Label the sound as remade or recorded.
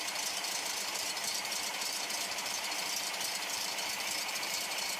remade